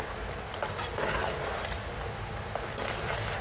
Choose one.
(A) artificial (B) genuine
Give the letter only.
B